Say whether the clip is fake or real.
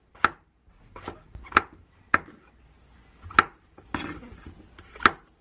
real